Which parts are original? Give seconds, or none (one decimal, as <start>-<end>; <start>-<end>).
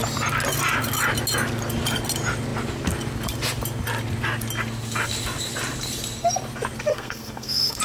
0.0-6.9